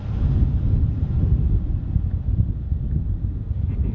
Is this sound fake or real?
real